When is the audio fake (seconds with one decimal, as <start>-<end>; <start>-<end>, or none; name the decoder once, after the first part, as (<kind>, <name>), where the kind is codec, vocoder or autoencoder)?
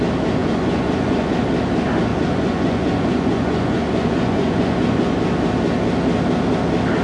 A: 0.4-1.3 (vocoder, Vocos); 2.1-5.0